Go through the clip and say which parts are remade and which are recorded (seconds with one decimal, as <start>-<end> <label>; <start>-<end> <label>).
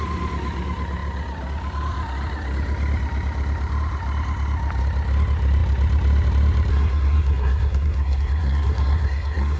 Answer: 0.0-6.7 recorded; 6.7-9.6 remade